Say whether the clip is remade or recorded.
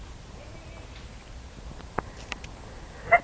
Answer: recorded